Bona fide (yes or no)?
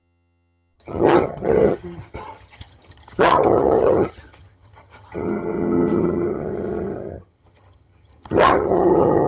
no